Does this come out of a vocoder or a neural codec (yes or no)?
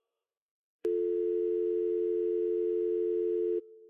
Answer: yes